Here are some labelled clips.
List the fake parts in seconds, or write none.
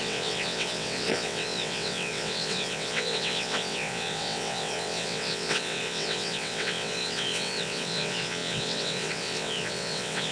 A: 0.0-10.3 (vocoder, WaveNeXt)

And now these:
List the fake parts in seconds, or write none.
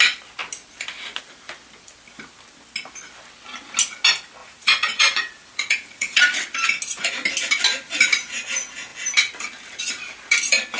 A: 4.4-6.2 (vocoder, Vocos)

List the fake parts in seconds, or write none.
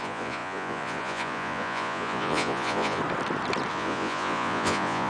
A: 0.0-3.0 (vocoder, Vocos); 3.7-5.1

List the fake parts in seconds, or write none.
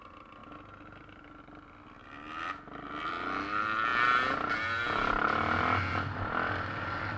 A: none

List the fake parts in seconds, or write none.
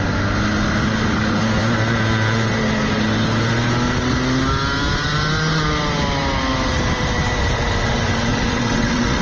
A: 8.3-9.2 (vocoder, WaveNeXt)